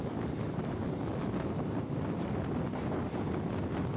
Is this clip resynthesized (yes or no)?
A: no